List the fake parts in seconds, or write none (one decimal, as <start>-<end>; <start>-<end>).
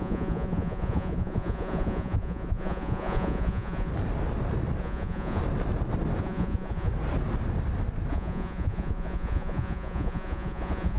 0.0-3.9; 4.8-5.4; 6.2-6.9; 8.1-11.0